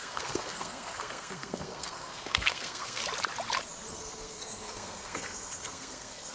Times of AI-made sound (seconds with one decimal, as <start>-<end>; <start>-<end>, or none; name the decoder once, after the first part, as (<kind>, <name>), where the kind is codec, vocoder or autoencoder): 0.0-3.0 (codec, SNAC); 3.9-6.3